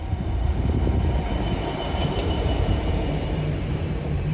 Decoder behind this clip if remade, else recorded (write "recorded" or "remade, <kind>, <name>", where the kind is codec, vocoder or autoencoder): remade, vocoder, BigVGAN v2